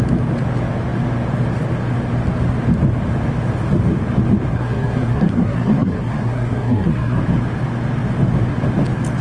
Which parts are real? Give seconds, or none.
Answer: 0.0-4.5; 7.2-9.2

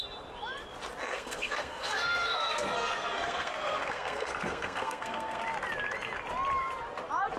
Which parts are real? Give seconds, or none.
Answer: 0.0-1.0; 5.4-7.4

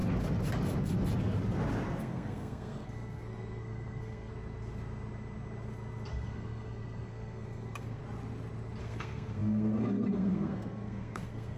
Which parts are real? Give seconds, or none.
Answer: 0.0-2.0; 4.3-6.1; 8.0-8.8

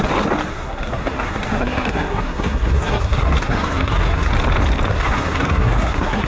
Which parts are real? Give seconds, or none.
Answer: 0.0-0.5; 4.3-4.9

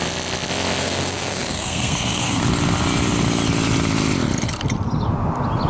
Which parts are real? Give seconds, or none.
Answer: 0.0-0.8; 2.4-5.7

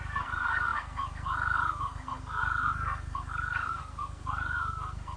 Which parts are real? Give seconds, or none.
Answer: none

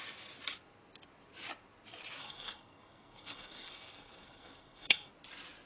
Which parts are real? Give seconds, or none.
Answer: 0.0-2.2; 5.1-5.7

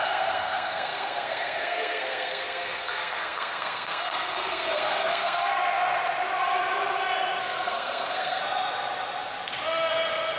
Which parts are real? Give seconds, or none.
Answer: 5.5-7.4; 8.4-10.4